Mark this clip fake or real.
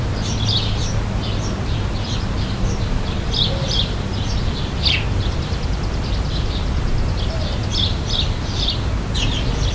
fake